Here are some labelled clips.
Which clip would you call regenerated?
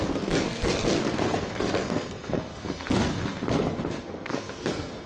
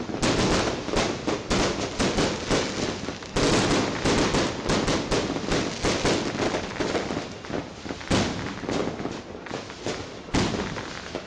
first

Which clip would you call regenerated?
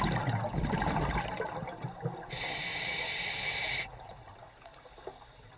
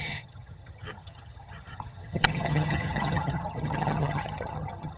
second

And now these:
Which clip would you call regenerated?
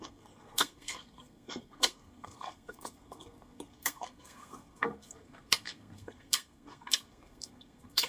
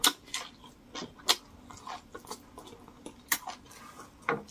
first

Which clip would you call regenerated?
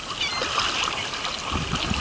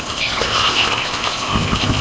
second